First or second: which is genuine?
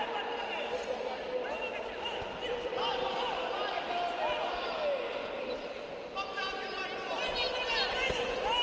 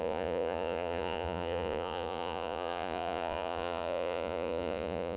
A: first